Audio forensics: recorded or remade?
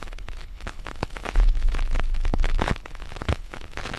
remade